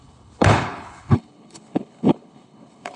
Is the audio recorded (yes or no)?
no